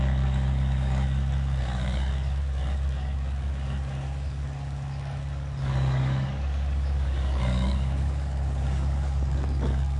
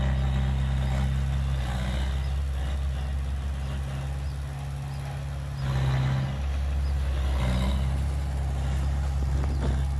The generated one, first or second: first